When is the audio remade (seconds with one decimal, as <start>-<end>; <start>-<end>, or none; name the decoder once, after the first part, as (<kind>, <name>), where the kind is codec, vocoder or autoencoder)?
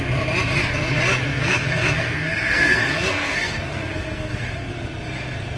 1.3-4.7 (codec, SNAC)